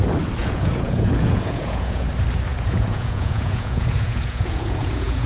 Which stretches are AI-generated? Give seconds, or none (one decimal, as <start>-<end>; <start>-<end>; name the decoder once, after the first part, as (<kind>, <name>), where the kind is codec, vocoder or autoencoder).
0.4-2.1 (vocoder, Vocos); 2.5-5.3